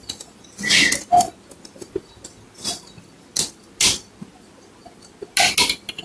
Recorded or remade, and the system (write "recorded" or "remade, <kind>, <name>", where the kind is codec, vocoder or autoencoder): recorded